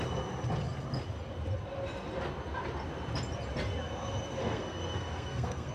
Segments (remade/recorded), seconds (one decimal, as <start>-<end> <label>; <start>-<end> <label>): 0.0-4.4 recorded; 4.4-5.7 remade